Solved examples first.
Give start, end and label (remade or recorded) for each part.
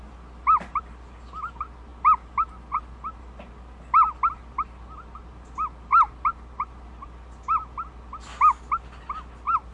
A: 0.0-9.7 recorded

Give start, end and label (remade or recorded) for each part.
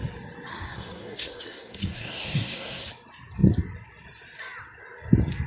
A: 0.0-0.5 recorded; 0.5-2.9 remade; 2.9-5.5 recorded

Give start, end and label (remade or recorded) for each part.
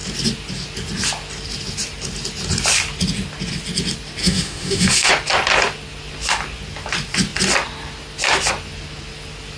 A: 0.0-4.2 recorded; 4.2-5.1 remade; 5.1-9.6 recorded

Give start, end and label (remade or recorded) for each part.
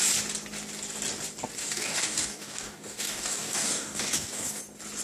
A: 0.0-1.6 recorded; 1.6-4.6 remade; 4.6-5.0 recorded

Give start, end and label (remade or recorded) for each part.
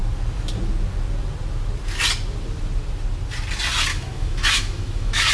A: 0.0-3.9 recorded; 3.9-5.3 remade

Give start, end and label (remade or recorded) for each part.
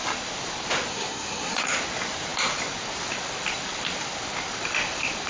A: 0.0-0.9 recorded; 0.9-1.6 remade; 1.6-5.3 recorded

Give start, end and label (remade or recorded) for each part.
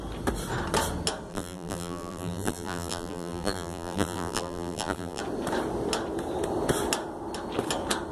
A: 0.0-1.3 recorded; 1.3-5.2 remade; 5.2-8.1 recorded